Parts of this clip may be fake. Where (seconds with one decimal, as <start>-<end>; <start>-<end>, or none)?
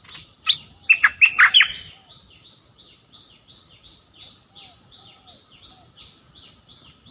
none